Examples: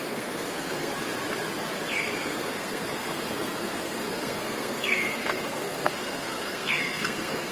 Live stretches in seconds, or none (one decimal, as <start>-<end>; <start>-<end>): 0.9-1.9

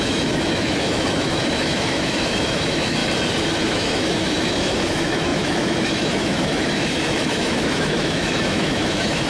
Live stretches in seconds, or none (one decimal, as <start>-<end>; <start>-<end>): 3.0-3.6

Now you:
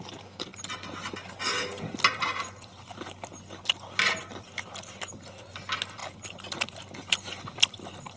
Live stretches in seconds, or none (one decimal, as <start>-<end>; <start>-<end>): 0.0-8.2